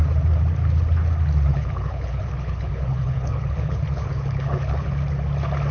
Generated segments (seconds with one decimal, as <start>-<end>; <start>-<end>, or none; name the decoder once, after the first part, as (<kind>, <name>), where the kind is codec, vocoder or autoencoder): 1.5-4.9 (codec, HILCodec)